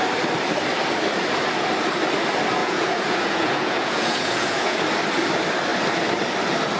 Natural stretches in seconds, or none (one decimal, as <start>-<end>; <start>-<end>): 0.0-2.6; 4.8-6.8